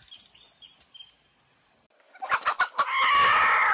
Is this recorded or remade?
recorded